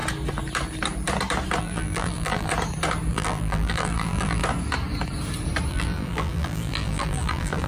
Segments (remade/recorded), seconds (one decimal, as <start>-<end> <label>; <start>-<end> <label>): 0.0-1.6 recorded; 1.6-2.5 remade; 2.5-3.1 recorded; 3.1-4.4 remade; 4.4-5.7 recorded; 5.7-7.7 remade